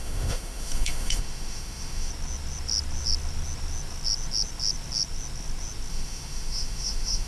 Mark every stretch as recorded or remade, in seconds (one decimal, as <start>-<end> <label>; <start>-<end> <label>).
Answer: 0.0-2.1 remade; 2.1-5.9 recorded; 5.9-7.3 remade